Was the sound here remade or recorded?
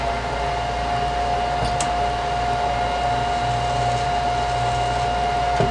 recorded